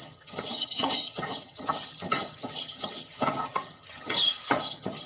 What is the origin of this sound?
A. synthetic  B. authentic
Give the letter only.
A